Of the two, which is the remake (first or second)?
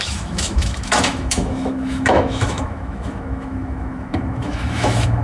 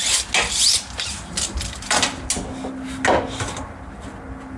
first